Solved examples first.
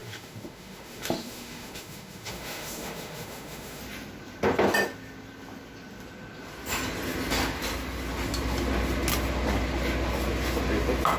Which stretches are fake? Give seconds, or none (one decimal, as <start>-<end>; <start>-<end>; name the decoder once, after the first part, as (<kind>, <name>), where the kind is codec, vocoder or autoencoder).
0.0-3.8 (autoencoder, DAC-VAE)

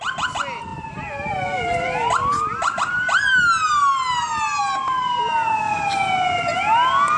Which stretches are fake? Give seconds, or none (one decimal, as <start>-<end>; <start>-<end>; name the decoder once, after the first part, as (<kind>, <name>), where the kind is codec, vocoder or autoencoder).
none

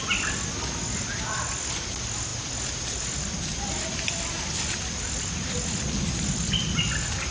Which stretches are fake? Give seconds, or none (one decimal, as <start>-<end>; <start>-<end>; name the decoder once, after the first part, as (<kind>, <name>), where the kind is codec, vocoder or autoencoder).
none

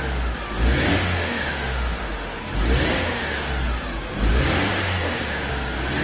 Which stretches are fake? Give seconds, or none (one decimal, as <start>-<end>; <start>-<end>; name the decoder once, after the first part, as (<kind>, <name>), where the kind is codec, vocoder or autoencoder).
0.9-2.4 (autoencoder, DAC-VAE); 2.9-3.5; 4.3-5.5

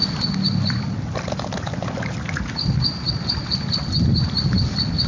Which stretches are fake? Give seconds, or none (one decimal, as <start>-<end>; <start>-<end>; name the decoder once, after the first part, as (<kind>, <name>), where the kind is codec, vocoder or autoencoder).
none

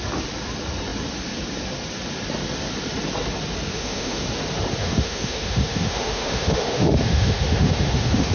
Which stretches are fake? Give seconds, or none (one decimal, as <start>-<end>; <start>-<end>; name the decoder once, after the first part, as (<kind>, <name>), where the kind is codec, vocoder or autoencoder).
3.7-4.2 (autoencoder, DAC-VAE); 4.8-8.3

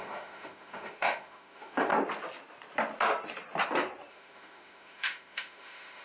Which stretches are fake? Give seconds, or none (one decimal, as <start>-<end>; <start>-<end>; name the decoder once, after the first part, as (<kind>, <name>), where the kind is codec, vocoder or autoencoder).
0.0-1.9 (autoencoder, DAC-VAE); 4.1-6.0

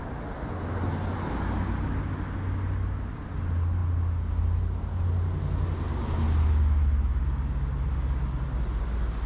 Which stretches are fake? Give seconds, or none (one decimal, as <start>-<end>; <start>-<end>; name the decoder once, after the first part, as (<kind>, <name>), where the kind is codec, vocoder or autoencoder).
none